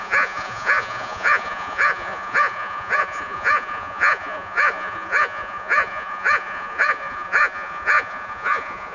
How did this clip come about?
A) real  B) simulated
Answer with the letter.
B